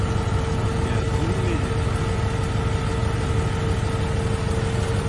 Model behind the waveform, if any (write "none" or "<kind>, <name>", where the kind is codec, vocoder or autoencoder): none